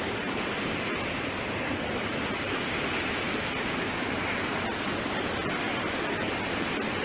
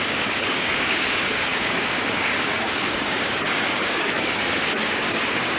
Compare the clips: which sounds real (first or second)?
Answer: first